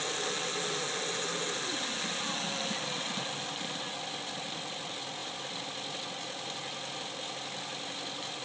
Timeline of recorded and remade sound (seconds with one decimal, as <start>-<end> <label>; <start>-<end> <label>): 0.0-8.4 recorded